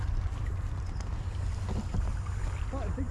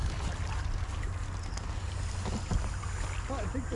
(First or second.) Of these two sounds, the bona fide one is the second